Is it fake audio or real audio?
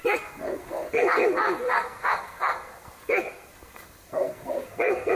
fake